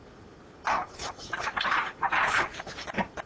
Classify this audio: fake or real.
real